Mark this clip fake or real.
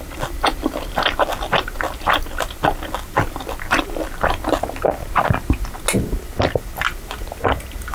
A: real